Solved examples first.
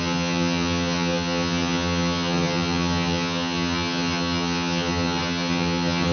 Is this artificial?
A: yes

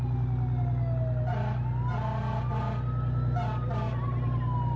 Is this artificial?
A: no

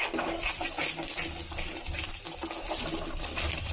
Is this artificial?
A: no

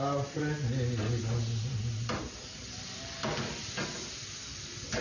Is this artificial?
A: no